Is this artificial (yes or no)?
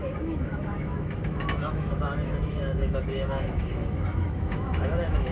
yes